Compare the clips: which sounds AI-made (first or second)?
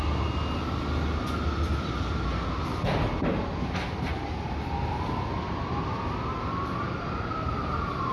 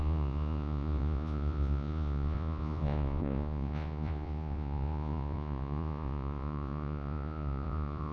second